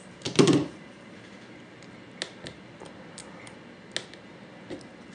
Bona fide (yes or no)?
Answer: yes